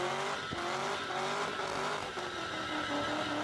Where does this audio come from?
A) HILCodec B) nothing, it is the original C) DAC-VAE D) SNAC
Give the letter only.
B